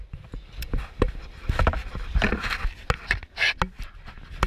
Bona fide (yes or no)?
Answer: yes